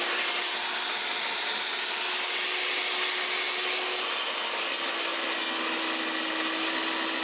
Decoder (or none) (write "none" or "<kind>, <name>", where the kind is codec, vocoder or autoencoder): none